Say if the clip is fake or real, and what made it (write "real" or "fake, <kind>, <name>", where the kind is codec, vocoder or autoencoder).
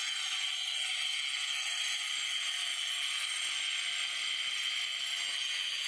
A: real